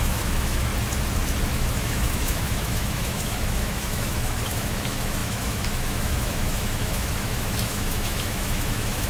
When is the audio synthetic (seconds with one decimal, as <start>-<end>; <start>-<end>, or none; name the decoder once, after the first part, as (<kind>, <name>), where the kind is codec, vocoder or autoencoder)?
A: 0.0-0.7 (autoencoder, DAC-VAE); 1.5-9.1